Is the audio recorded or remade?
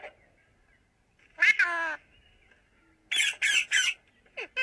recorded